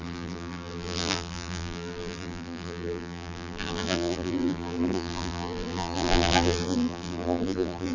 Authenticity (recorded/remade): remade